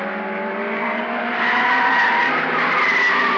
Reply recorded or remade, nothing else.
remade